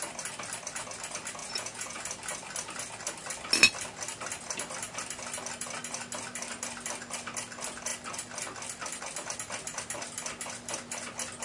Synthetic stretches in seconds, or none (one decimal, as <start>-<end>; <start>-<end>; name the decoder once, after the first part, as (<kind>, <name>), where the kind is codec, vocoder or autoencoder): 1.4-2.0 (vocoder, Vocos)